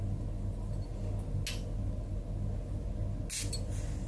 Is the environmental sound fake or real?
real